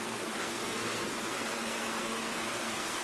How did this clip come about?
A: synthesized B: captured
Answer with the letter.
A